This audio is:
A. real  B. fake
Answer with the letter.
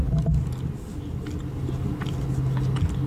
A